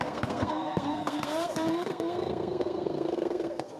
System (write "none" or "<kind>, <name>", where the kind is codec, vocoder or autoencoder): codec, SNAC